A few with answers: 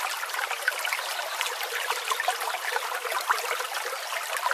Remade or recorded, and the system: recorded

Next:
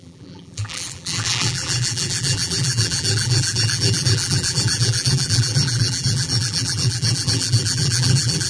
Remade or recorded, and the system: remade, vocoder, BigVGAN v2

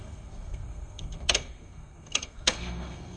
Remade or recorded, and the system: remade, codec, SNAC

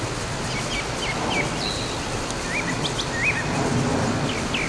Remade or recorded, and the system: recorded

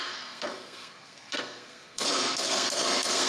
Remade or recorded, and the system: remade, codec, SNAC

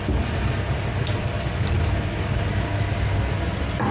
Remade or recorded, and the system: recorded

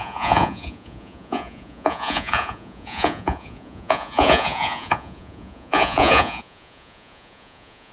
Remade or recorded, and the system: remade, vocoder, Vocos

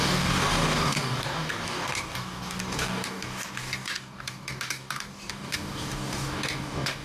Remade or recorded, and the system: remade, codec, DAC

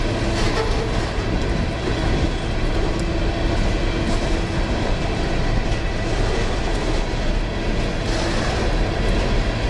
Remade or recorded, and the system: recorded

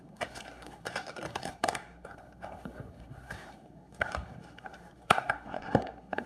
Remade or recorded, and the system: remade, codec, SNAC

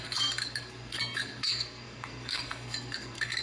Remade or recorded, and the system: remade, codec, SNAC